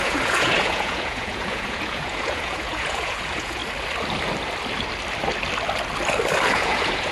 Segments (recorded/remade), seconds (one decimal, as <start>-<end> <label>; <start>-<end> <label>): 0.0-3.6 remade; 3.6-6.5 recorded; 6.5-7.1 remade